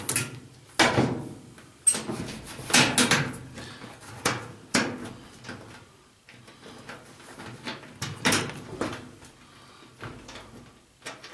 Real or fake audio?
real